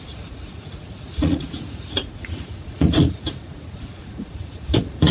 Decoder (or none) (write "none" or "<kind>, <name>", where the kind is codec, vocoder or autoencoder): vocoder, Vocos